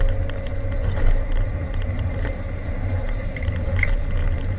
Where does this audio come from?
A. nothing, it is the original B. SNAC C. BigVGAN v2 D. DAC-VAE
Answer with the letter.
C